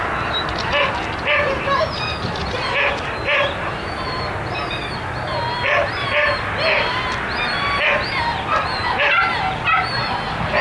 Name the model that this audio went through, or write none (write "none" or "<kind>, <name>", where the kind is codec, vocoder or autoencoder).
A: none